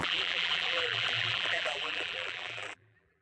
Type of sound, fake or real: fake